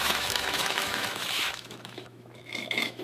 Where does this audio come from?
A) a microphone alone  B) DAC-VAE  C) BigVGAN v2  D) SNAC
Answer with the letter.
B